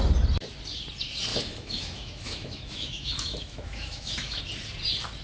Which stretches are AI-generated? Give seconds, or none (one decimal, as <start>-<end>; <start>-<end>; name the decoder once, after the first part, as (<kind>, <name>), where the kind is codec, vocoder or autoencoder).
1.3-4.4 (autoencoder, DAC-VAE)